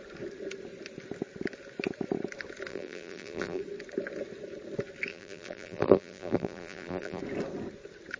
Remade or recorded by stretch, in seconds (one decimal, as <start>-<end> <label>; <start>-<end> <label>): 0.0-2.7 recorded; 2.7-3.6 remade; 3.6-5.1 recorded; 5.1-7.2 remade; 7.2-8.2 recorded